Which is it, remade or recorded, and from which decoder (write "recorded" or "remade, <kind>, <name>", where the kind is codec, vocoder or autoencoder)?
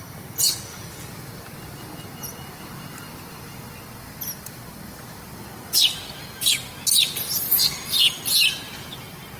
recorded